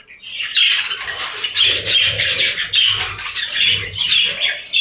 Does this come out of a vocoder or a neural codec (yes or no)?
no